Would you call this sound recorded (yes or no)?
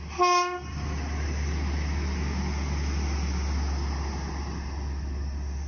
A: yes